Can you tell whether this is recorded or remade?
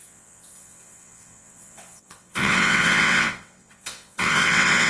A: remade